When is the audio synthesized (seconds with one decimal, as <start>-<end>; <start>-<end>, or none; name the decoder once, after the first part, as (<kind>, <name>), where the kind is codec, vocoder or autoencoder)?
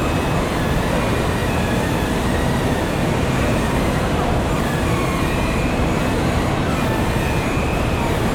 1.4-6.4 (vocoder, BigVGAN v2)